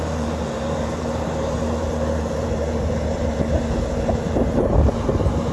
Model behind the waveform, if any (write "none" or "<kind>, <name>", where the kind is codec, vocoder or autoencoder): vocoder, BigVGAN v2